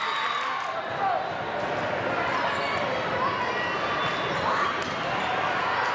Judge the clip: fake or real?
real